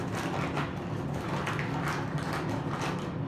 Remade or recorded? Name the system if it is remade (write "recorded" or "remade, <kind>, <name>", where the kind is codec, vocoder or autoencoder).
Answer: recorded